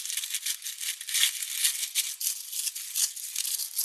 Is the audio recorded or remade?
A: recorded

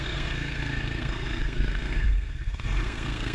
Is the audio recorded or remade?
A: remade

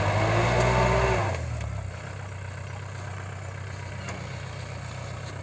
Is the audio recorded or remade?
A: recorded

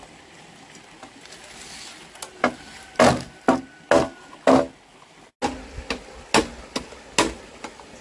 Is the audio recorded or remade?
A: recorded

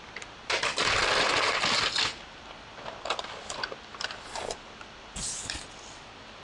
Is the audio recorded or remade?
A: recorded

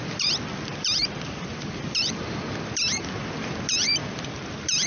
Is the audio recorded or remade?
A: remade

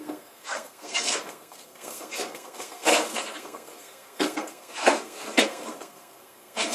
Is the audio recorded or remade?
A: remade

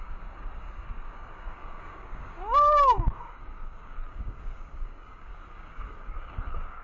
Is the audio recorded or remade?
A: remade